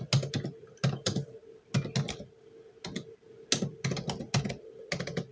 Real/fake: real